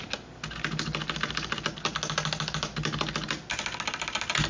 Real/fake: real